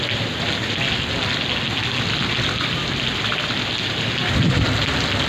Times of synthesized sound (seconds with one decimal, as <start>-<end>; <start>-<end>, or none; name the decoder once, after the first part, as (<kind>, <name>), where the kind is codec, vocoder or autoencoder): none